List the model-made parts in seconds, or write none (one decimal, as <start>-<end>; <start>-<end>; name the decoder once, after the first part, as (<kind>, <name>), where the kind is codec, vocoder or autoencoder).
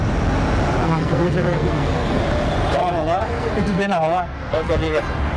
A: 0.8-2.2 (codec, SNAC); 2.8-5.0